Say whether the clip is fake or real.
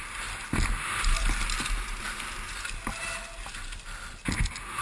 real